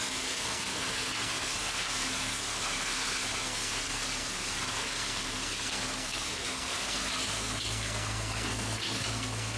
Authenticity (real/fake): fake